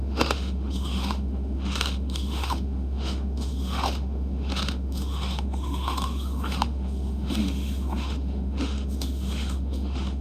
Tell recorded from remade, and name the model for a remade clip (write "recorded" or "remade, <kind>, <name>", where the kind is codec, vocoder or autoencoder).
remade, autoencoder, DAC-VAE